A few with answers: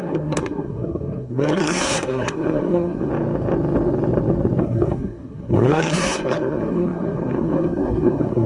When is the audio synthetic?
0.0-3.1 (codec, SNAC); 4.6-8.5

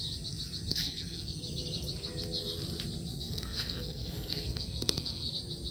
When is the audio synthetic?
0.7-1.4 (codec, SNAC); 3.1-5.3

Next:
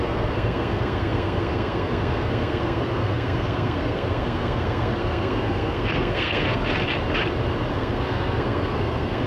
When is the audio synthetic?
0.0-6.7 (codec, SNAC); 7.7-9.3

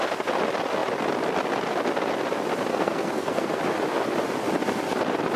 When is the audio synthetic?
2.7-3.6 (codec, SNAC)